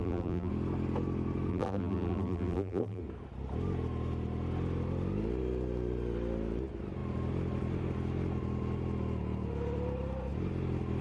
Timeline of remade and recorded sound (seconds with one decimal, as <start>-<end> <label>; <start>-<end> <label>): 0.0-0.5 remade; 0.5-1.5 recorded; 1.5-3.0 remade; 3.0-11.0 recorded